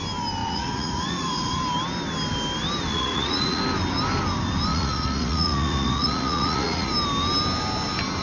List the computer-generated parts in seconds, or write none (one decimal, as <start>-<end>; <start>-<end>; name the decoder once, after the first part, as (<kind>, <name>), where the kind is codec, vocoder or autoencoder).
0.4-1.6 (vocoder, Vocos); 2.9-3.6; 4.7-6.9